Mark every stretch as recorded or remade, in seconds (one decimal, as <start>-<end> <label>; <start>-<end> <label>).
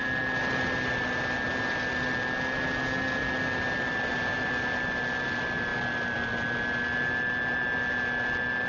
0.0-8.7 recorded